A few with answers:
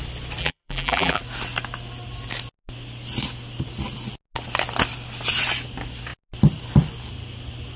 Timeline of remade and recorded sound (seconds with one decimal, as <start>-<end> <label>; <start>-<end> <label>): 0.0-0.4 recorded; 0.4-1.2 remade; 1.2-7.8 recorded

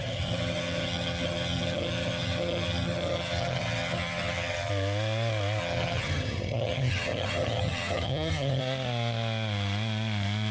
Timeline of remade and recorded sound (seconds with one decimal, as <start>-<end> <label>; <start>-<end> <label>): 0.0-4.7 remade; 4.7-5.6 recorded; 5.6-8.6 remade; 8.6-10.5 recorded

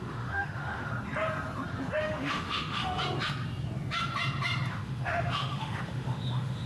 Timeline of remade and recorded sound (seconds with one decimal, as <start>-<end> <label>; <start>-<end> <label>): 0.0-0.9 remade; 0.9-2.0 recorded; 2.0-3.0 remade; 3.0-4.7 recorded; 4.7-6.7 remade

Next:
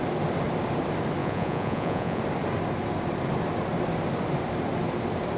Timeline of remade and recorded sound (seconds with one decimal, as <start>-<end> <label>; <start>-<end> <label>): 0.0-1.2 recorded; 1.2-2.2 remade; 2.2-5.4 recorded

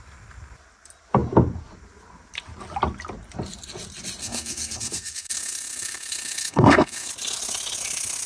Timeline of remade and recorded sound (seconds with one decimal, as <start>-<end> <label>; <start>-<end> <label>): 0.0-4.2 recorded; 4.2-7.1 remade; 7.1-8.3 recorded

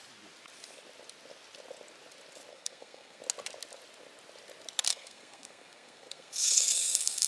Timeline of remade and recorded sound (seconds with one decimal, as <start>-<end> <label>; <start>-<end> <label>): 0.0-2.5 recorded; 2.5-3.2 remade; 3.2-4.9 recorded; 4.9-7.3 remade